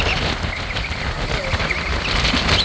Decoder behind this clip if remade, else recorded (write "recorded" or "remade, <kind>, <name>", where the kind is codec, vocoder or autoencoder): recorded